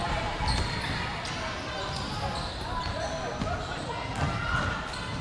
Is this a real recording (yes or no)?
yes